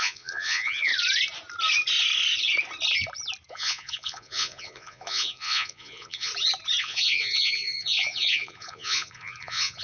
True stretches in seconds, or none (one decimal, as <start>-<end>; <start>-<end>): 0.9-3.5; 6.3-6.8